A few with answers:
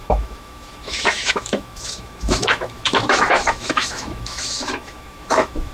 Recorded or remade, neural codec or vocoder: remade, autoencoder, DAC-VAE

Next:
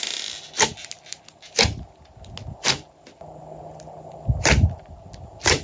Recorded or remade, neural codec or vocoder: recorded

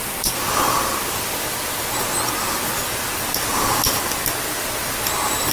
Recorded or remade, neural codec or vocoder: recorded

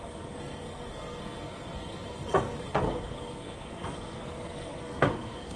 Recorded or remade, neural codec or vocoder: remade, codec, SNAC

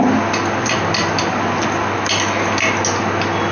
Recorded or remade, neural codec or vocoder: recorded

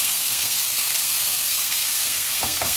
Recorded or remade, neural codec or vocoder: remade, codec, SNAC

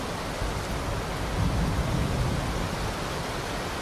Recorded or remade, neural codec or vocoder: recorded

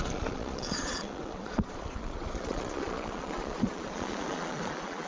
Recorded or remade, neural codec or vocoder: remade, vocoder, Vocos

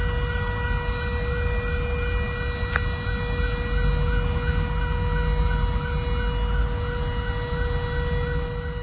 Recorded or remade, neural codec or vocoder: recorded